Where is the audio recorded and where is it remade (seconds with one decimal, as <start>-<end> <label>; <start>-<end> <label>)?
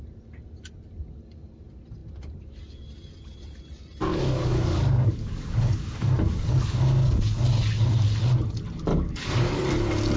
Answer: 0.0-4.1 recorded; 4.1-7.2 remade; 7.2-8.9 recorded; 8.9-9.6 remade; 9.6-10.2 recorded